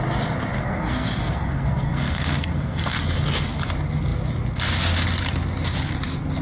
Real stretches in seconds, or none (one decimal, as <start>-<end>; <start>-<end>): 0.0-0.6; 3.0-6.4